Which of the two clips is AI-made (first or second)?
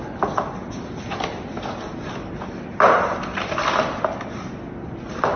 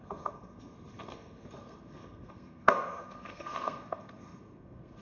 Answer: second